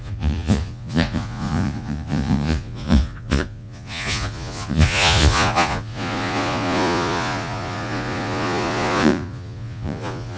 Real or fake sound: fake